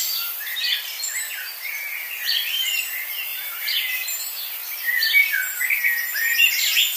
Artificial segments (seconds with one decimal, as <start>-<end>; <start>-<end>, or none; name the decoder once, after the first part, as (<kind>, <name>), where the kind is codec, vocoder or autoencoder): 3.3-4.4 (vocoder, BigVGAN v2)